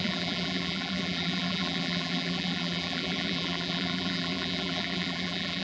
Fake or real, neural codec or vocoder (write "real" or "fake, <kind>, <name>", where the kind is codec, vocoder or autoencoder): fake, vocoder, BigVGAN v2